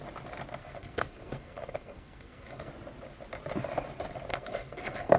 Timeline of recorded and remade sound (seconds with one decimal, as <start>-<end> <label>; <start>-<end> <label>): 0.0-0.6 recorded; 0.6-2.7 remade; 2.7-4.3 recorded; 4.3-5.2 remade